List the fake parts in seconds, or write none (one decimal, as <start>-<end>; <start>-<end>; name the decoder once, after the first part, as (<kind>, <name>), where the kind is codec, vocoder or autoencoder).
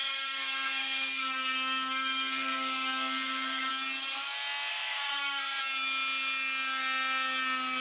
0.0-3.7 (codec, SNAC); 4.7-5.6